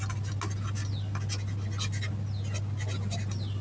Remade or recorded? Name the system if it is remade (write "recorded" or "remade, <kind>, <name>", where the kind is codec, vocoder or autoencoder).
recorded